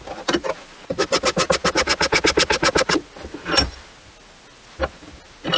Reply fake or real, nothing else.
real